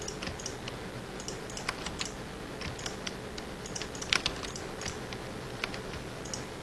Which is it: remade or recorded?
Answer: recorded